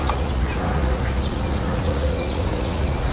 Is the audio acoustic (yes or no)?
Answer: no